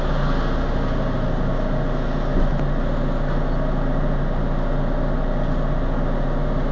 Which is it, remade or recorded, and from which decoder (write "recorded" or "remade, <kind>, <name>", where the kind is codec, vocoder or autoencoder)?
recorded